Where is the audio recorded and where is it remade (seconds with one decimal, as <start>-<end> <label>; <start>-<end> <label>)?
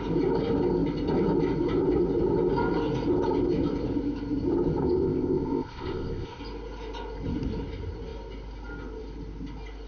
0.0-4.8 recorded; 4.8-6.4 remade; 6.4-9.9 recorded